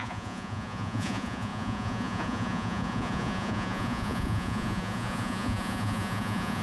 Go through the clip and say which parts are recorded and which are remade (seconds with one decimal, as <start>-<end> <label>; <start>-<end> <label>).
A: 0.0-6.6 remade